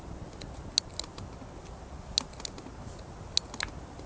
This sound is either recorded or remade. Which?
recorded